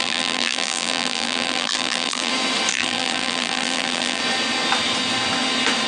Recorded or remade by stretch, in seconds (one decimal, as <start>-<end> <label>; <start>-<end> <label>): 0.0-2.3 remade; 2.3-2.7 recorded; 2.7-4.2 remade; 4.2-5.9 recorded